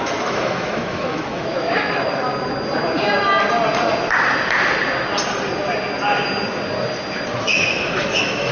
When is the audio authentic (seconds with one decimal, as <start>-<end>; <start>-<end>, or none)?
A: 2.3-7.4

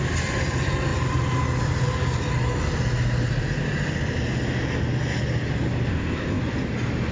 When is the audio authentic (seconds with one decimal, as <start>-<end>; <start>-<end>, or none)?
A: 0.0-5.9; 6.4-7.1